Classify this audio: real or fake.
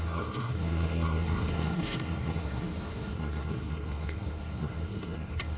fake